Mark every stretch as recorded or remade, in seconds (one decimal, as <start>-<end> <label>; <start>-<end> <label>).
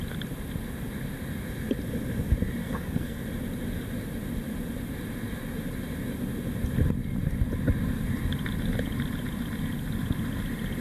0.0-2.6 recorded; 2.6-3.2 remade; 3.2-10.8 recorded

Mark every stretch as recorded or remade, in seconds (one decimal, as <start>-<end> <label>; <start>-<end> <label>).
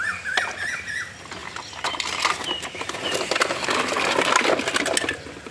0.0-5.5 recorded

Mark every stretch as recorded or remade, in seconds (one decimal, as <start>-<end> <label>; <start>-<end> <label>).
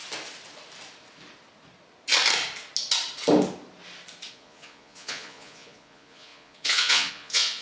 0.0-4.3 recorded; 4.3-7.6 remade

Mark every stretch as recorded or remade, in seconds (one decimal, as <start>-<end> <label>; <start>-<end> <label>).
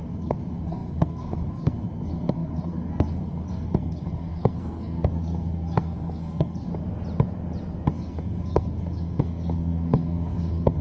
0.0-6.7 remade; 6.7-7.9 recorded; 7.9-10.8 remade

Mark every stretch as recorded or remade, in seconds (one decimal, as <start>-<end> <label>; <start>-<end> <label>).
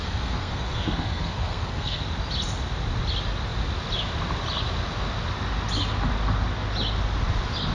0.0-2.0 remade; 2.0-7.7 recorded